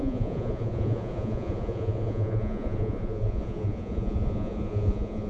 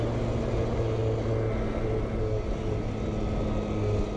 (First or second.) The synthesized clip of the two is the first